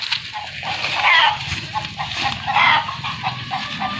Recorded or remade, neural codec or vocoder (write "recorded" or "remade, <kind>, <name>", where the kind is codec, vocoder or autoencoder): recorded